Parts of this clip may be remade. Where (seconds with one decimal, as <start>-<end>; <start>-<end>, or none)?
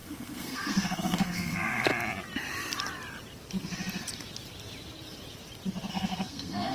0.0-1.9; 5.9-6.7